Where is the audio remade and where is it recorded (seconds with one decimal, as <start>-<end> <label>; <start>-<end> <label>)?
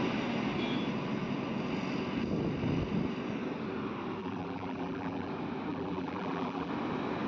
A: 0.0-4.2 recorded; 4.2-5.3 remade; 5.3-5.7 recorded; 5.7-6.7 remade; 6.7-7.3 recorded